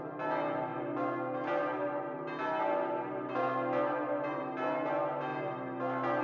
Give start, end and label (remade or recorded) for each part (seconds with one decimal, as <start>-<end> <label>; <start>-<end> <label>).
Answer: 0.0-6.2 recorded